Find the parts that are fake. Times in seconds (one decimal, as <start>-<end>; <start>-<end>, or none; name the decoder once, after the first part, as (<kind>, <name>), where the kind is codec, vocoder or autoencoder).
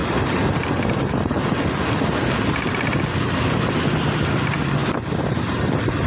none